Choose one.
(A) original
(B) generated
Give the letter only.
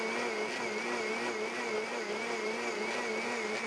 A